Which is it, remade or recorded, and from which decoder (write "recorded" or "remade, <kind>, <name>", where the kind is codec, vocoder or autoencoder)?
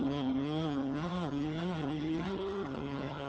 remade, vocoder, HiFi-GAN